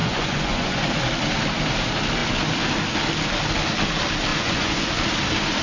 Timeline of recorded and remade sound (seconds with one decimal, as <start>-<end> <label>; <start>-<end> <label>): 0.0-0.8 remade; 0.8-4.3 recorded; 4.3-4.9 remade; 4.9-5.6 recorded